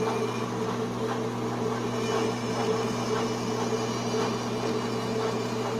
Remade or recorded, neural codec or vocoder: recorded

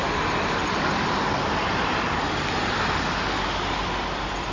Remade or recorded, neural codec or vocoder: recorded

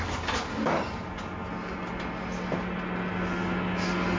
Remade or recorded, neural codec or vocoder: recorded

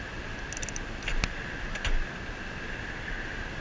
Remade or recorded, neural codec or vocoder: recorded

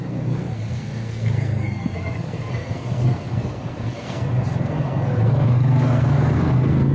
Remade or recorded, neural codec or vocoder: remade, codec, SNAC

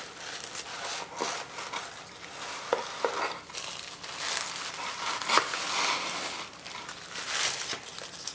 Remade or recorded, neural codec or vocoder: recorded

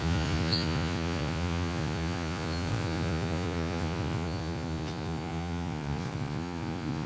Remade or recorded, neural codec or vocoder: remade, vocoder, Vocos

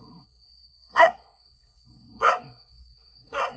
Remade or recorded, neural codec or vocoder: remade, codec, SNAC